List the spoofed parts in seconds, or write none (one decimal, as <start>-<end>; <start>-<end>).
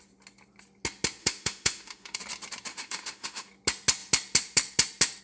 1.2-2.2; 2.7-3.5